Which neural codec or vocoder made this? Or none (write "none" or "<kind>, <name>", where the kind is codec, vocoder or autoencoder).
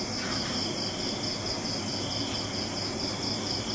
none